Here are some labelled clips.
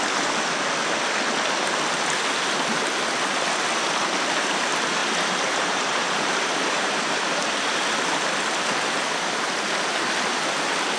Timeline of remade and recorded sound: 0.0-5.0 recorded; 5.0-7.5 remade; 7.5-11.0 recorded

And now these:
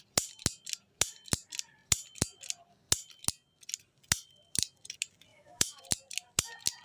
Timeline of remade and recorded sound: 0.0-5.3 recorded; 5.3-5.8 remade; 5.8-6.8 recorded

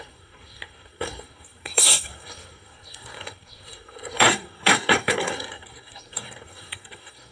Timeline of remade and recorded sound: 0.0-7.3 remade

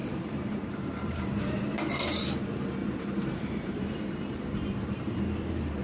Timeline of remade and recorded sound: 0.0-1.6 remade; 1.6-2.8 recorded; 2.8-5.2 remade; 5.2-5.8 recorded

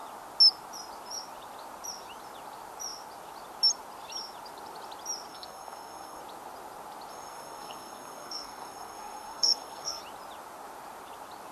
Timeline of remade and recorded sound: 0.0-5.3 recorded; 5.3-6.2 remade; 6.2-7.1 recorded; 7.1-10.0 remade; 10.0-11.5 recorded

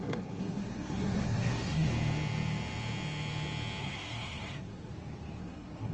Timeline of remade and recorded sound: 0.0-1.9 remade; 1.9-3.8 recorded; 3.8-4.9 remade; 4.9-5.4 recorded; 5.4-5.9 remade

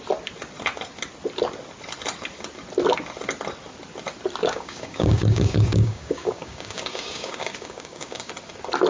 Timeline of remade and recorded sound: 0.0-4.4 recorded; 4.4-8.3 remade; 8.3-8.9 recorded

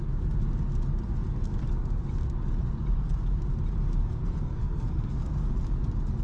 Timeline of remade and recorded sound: 0.0-4.0 recorded; 4.0-5.3 remade; 5.3-6.2 recorded